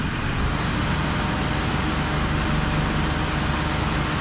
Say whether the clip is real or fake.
real